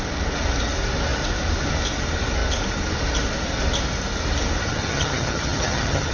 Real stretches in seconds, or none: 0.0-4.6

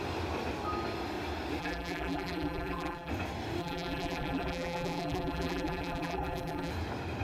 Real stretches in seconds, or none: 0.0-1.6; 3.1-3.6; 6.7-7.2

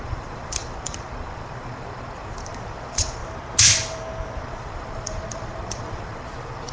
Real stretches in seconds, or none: 3.2-4.4